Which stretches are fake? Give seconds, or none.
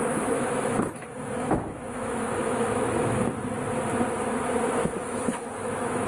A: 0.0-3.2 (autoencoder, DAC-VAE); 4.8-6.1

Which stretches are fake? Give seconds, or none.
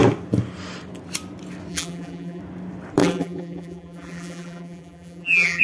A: 1.7-2.4 (vocoder, BigVGAN v2); 3.0-5.6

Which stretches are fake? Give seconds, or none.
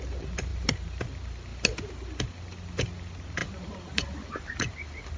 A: 0.5-1.0 (vocoder, BigVGAN v2); 3.4-4.6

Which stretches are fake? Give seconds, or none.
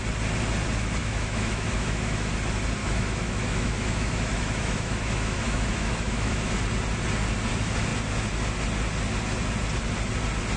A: 1.0-2.3 (autoencoder, DAC-VAE); 2.8-6.6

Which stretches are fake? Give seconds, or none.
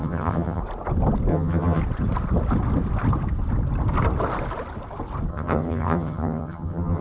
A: 0.0-0.6 (vocoder, HiFi-GAN); 1.3-1.8; 5.3-7.0